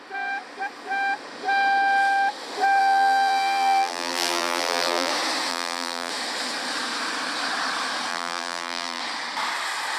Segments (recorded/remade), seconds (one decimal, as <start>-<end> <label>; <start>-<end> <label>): 0.0-2.8 recorded; 2.8-5.1 remade; 5.1-5.5 recorded; 5.5-6.1 remade; 6.1-8.1 recorded; 8.1-9.0 remade; 9.0-10.0 recorded

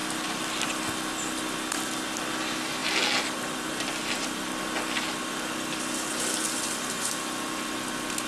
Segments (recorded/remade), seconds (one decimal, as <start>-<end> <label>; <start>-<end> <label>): 0.0-8.3 recorded

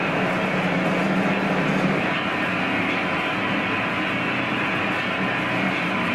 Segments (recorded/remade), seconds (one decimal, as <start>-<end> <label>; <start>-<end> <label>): 0.0-6.1 recorded

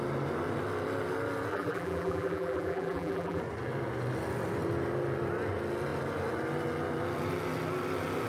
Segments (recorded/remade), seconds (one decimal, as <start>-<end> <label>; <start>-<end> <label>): 0.0-1.5 recorded; 1.5-3.4 remade; 3.4-8.3 recorded